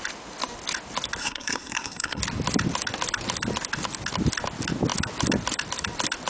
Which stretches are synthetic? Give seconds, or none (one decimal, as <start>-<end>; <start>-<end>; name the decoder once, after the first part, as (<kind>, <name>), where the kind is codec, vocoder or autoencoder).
1.2-2.2 (codec, SNAC)